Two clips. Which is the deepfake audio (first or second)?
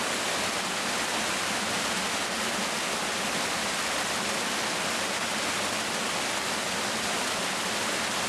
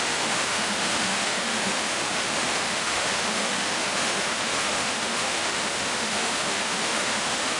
second